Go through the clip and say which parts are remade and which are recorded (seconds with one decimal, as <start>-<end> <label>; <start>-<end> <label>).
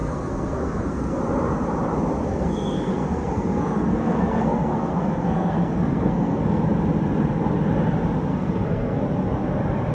0.0-1.2 remade; 1.2-2.3 recorded; 2.3-6.6 remade; 6.6-8.3 recorded; 8.3-9.0 remade; 9.0-9.9 recorded